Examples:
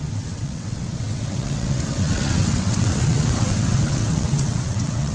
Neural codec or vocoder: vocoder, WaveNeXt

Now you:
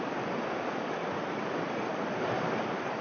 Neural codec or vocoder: none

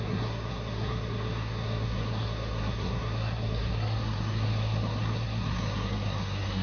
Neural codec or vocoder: codec, SNAC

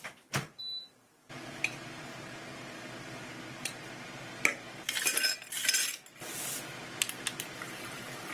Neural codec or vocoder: none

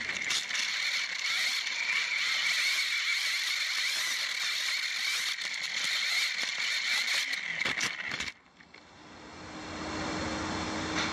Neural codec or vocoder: none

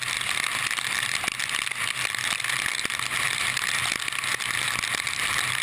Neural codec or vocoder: none